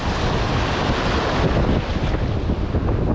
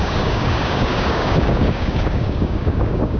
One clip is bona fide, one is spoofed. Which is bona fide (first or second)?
first